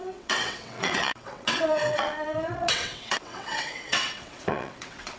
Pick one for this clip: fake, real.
fake